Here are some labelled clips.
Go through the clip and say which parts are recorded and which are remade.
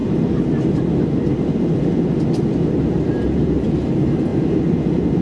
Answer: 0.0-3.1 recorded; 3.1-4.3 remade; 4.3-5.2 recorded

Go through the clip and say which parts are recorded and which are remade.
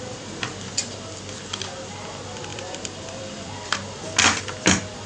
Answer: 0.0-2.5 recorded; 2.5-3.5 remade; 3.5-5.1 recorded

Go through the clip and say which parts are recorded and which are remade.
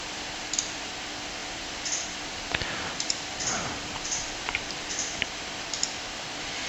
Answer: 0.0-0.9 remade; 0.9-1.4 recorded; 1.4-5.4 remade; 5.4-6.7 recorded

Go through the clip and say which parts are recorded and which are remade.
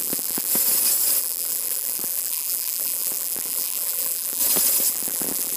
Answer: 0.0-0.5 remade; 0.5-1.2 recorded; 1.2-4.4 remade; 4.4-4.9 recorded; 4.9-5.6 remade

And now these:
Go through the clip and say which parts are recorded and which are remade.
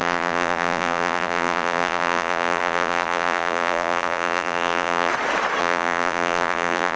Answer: 0.0-5.1 remade; 5.1-5.6 recorded; 5.6-7.0 remade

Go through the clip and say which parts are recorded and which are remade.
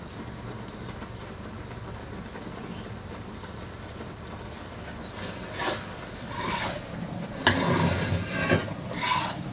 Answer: 0.0-8.6 recorded; 8.6-9.5 remade